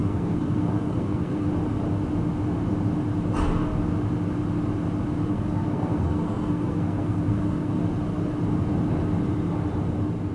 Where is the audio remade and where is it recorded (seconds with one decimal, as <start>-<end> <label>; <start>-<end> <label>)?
0.0-1.5 remade; 1.5-5.3 recorded; 5.3-7.8 remade; 7.8-10.3 recorded